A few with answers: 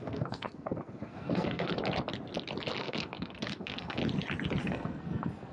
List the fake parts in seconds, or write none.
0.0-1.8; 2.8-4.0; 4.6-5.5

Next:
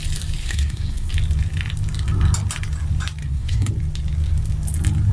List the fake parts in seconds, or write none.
0.4-1.1; 3.2-3.7

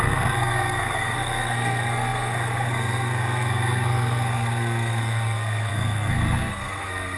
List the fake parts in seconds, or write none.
0.0-7.2

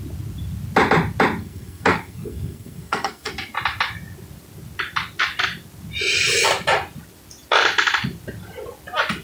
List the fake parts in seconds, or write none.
1.4-3.3

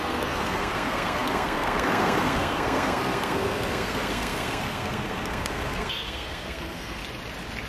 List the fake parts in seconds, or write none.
0.0-7.0

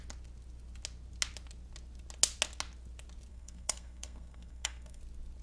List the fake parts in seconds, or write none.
3.3-5.0